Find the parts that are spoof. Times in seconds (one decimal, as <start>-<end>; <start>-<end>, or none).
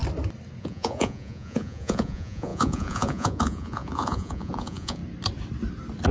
0.6-5.0